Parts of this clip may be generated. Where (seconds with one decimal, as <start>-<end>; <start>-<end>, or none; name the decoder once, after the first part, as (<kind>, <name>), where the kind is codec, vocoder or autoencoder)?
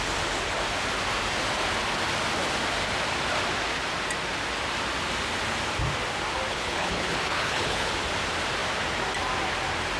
6.5-7.9 (codec, HILCodec)